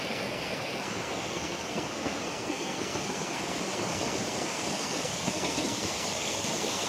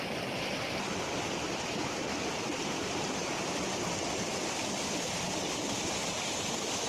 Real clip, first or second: second